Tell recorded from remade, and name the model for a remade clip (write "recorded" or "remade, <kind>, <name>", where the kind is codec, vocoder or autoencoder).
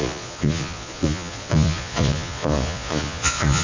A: remade, vocoder, Vocos